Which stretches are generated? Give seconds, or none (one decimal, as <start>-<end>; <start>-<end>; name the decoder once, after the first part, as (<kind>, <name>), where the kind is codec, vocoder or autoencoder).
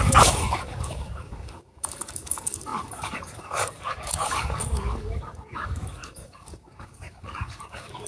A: 0.0-8.1 (codec, DAC)